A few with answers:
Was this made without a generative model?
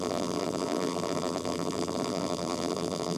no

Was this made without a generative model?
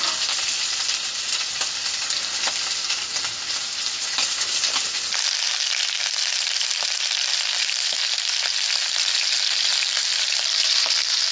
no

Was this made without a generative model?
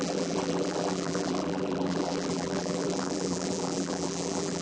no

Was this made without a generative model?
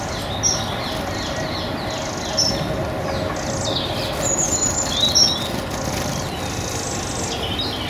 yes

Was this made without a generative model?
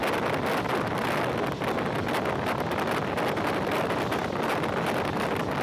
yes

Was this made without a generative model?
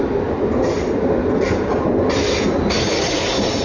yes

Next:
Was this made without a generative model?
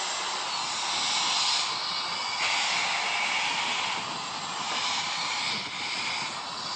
yes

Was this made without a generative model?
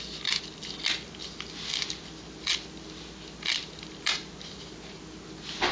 yes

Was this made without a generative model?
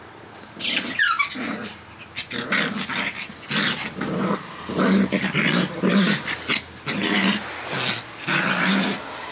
yes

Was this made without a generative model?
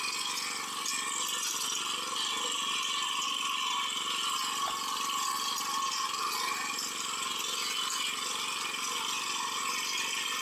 yes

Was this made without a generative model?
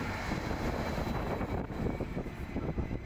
no